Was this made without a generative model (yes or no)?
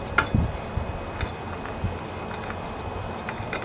yes